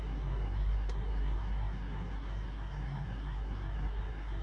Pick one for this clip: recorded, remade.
remade